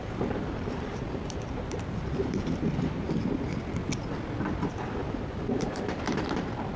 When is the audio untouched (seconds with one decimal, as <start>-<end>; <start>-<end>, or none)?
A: 3.1-5.0; 6.0-6.8